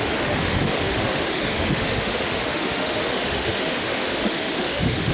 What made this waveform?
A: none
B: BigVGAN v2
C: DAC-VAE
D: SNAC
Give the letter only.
C